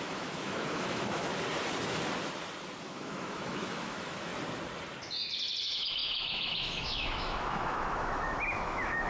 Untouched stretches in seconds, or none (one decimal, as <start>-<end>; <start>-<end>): 1.3-2.8; 4.3-5.6

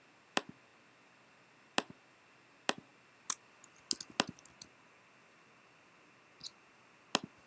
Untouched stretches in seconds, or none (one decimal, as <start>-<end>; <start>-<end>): 0.0-7.5

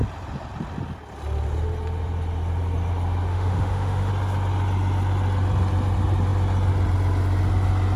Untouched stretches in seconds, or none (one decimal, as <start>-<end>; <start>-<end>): 0.0-3.3; 4.1-8.0

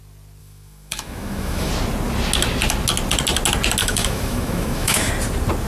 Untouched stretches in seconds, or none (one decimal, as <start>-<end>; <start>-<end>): 0.0-0.4; 1.7-3.8; 5.1-5.7

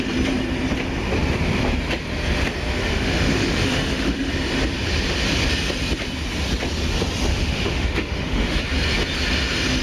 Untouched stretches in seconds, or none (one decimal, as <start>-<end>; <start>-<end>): 0.0-2.8; 4.3-7.3; 8.6-9.8

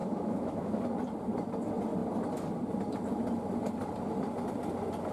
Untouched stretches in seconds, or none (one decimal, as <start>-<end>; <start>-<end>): 0.8-5.1

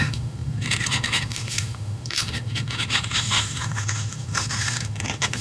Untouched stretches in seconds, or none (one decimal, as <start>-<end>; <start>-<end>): none